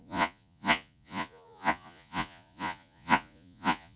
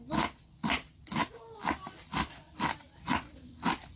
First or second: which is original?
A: second